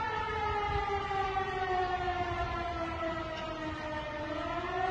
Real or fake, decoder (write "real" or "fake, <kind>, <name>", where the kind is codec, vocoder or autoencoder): real